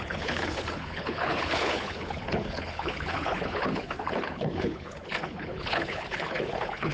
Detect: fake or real fake